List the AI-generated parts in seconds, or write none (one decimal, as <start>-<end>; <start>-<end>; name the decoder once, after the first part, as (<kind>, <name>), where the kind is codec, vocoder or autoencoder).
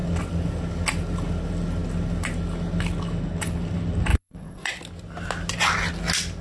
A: 4.1-4.8 (vocoder, WaveNeXt)